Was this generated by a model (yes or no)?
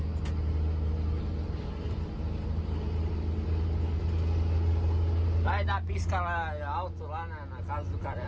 no